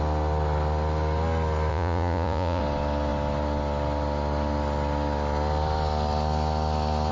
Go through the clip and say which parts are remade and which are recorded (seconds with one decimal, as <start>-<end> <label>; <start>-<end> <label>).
0.0-1.7 recorded; 1.7-2.6 remade; 2.6-7.1 recorded